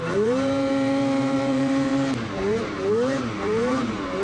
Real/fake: fake